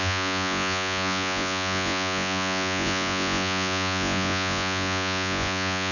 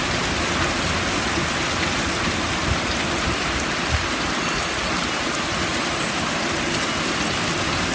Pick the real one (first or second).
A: second